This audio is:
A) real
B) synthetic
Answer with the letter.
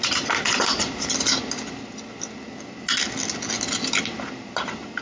A